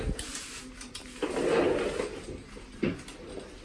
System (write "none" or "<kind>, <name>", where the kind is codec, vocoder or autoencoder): none